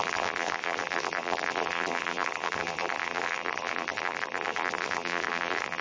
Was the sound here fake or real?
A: fake